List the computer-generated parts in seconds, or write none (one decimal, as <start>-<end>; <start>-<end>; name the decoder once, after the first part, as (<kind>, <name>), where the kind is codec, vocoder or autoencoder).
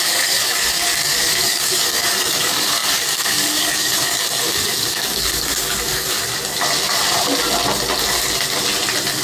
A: 0.0-6.2 (codec, DAC)